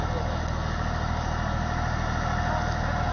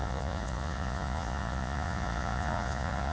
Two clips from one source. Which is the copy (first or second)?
second